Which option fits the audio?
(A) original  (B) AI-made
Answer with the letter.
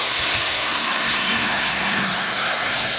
B